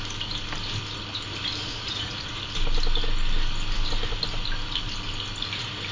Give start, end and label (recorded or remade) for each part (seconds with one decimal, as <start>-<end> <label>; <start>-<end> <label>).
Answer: 0.0-1.7 recorded; 1.7-2.4 remade; 2.4-5.9 recorded